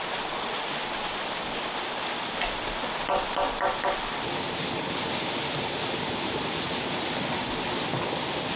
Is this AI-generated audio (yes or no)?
no